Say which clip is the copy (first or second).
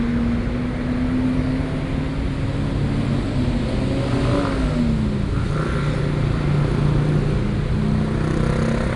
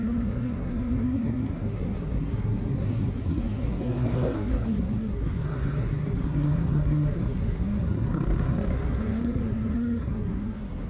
second